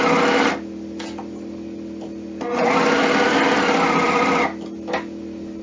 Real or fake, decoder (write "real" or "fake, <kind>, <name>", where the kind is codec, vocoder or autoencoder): real